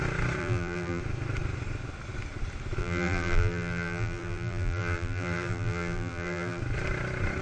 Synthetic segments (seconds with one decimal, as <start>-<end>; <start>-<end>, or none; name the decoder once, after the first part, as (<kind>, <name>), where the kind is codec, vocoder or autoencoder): 0.4-1.0 (vocoder, BigVGAN v2); 2.8-6.6